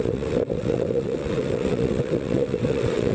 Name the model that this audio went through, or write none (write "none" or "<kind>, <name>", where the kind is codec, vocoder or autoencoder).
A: vocoder, WaveNeXt